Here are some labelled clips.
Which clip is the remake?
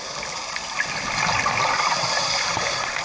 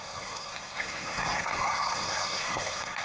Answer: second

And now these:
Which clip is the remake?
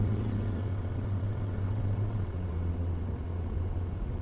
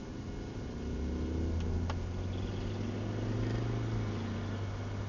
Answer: first